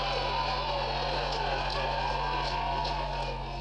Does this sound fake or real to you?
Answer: real